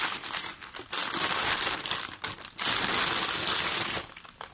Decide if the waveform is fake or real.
real